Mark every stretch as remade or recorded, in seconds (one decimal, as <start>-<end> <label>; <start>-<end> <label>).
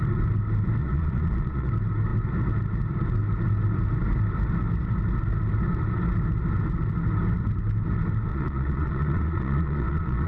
0.0-0.8 recorded; 0.8-1.7 remade; 1.7-8.3 recorded; 8.3-10.3 remade